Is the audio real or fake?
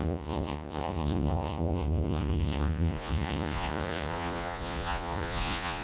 fake